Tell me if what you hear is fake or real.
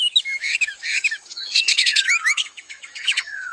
fake